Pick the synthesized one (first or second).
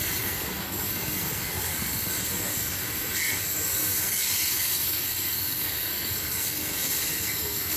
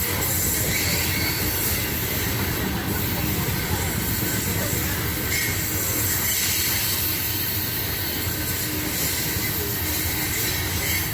first